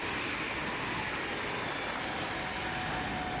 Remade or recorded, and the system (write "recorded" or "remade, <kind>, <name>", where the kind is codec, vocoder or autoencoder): recorded